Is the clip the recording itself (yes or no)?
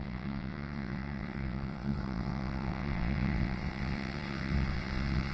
no